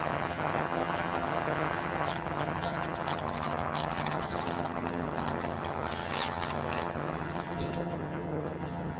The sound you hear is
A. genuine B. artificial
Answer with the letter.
B